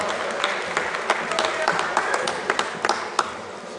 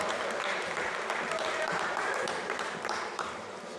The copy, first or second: second